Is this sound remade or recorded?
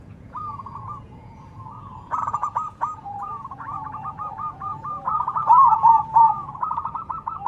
remade